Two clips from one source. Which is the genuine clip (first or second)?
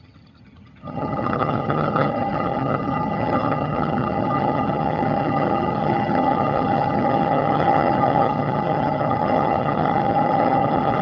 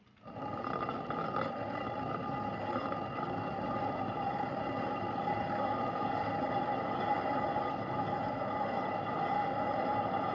second